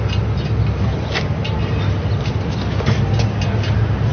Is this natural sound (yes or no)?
yes